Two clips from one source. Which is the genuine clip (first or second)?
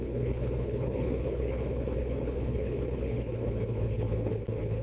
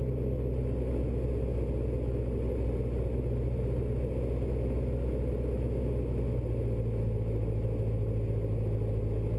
second